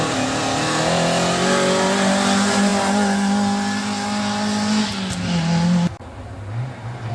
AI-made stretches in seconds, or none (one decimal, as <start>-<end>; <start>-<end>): none